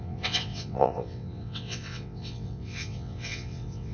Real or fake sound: fake